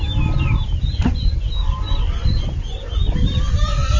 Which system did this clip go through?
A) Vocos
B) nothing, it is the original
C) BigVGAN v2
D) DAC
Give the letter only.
B